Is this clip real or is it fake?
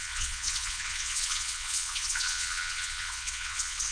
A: fake